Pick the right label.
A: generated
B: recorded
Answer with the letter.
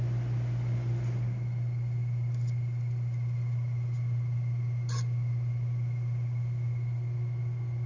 B